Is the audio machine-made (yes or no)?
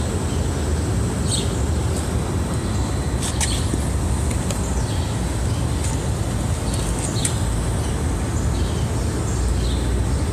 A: no